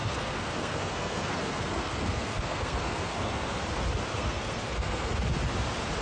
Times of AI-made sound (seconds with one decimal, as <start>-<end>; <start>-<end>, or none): 0.0-3.6; 4.1-5.1